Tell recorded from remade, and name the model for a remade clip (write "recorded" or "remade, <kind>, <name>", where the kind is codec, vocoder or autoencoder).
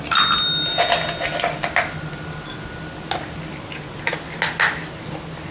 recorded